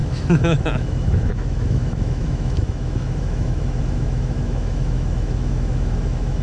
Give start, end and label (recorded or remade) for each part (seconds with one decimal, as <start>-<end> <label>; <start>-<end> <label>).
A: 0.0-6.4 remade